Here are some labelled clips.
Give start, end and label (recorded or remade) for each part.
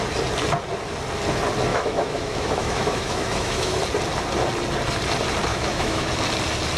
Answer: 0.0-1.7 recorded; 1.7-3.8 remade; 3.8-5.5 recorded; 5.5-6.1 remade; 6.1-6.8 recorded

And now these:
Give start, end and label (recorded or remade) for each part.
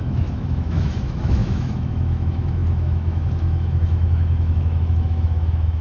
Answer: 0.0-5.8 remade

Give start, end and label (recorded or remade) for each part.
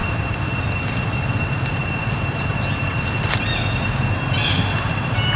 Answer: 0.0-5.4 recorded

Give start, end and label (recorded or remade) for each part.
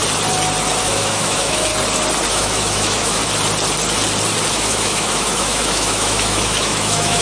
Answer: 0.0-0.8 recorded; 0.8-1.7 remade; 1.7-2.3 recorded; 2.3-3.2 remade; 3.2-4.5 recorded; 4.5-7.2 remade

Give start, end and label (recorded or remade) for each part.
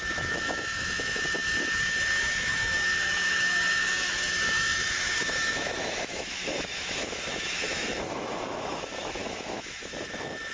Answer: 0.0-10.5 remade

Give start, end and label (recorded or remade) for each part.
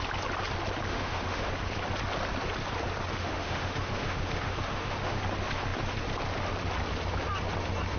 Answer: 0.0-0.9 recorded; 0.9-1.5 remade; 1.5-3.2 recorded; 3.2-5.2 remade; 5.2-8.0 recorded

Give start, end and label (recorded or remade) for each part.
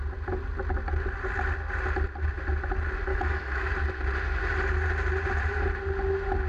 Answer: 0.0-3.1 recorded; 3.1-3.7 remade; 3.7-6.5 recorded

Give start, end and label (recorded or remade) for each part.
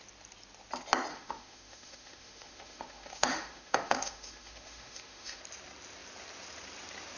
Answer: 0.0-1.1 recorded; 1.1-5.4 remade; 5.4-7.2 recorded